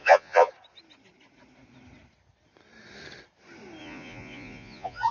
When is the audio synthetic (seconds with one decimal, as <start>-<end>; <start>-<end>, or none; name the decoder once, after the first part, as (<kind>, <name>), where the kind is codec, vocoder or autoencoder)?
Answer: 0.0-0.5 (vocoder, Vocos); 3.8-5.1